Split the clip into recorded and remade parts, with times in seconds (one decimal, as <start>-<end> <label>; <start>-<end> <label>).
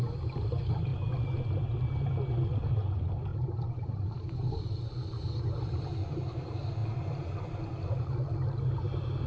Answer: 0.0-3.3 recorded; 3.3-5.2 remade; 5.2-9.3 recorded